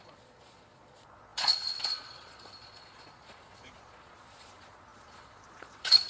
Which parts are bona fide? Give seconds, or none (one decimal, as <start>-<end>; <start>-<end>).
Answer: none